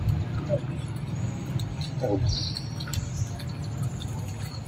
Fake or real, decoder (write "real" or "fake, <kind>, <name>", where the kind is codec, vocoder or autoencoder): real